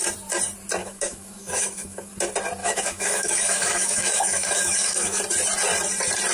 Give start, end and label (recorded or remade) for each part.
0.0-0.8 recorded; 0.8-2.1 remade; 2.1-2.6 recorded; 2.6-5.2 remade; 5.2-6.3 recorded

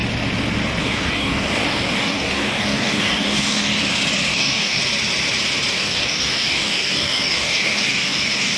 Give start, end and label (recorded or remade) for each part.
0.0-0.8 recorded; 0.8-3.7 remade; 3.7-4.3 recorded; 4.3-4.8 remade; 4.8-5.7 recorded; 5.7-8.6 remade

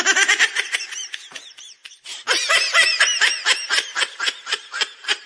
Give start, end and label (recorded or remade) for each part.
0.0-5.3 remade

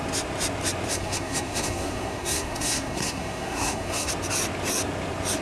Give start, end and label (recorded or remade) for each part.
0.0-0.9 recorded; 0.9-4.1 remade; 4.1-5.4 recorded

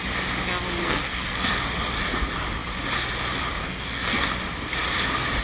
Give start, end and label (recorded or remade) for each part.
0.0-0.8 recorded; 0.8-1.5 remade; 1.5-3.6 recorded; 3.6-4.3 remade; 4.3-5.4 recorded

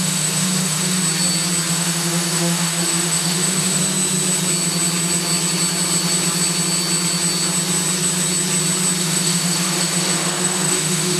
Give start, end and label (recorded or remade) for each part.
0.0-1.0 remade; 1.0-1.7 recorded; 1.7-3.8 remade; 3.8-9.0 recorded; 9.0-11.2 remade

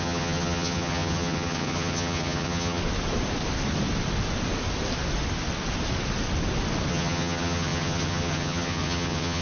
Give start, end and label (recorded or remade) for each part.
0.0-2.8 remade; 2.8-6.9 recorded; 6.9-9.4 remade